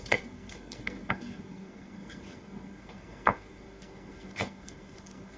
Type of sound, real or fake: fake